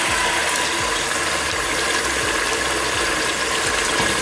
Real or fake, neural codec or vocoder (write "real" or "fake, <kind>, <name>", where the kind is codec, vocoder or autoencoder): real